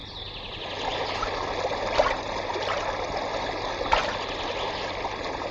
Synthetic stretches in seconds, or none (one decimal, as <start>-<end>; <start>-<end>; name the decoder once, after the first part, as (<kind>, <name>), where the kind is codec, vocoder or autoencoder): none